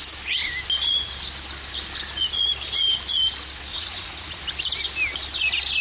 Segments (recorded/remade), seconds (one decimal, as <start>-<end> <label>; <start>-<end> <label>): 0.0-3.7 recorded; 3.7-4.4 remade; 4.4-5.8 recorded